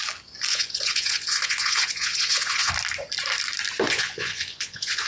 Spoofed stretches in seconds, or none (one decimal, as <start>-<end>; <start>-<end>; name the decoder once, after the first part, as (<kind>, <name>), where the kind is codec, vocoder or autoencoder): 0.5-2.7 (vocoder, Vocos); 3.9-5.1